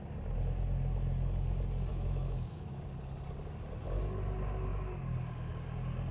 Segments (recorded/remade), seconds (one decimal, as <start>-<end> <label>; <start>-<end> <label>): 0.0-1.9 recorded; 1.9-2.8 remade; 2.8-6.1 recorded